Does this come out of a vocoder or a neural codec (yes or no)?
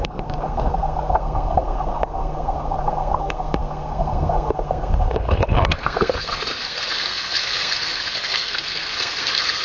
yes